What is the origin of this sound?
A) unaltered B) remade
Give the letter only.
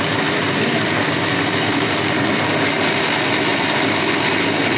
A